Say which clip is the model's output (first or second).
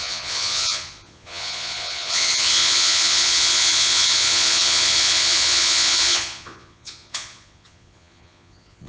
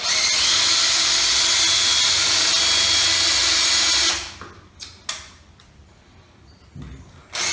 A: first